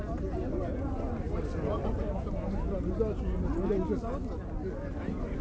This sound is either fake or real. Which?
real